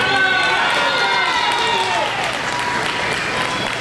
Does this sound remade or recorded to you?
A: recorded